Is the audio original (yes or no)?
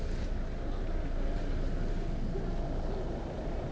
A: yes